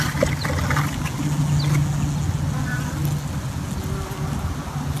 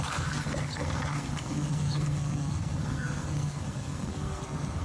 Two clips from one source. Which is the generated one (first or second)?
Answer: second